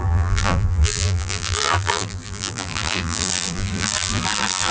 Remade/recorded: remade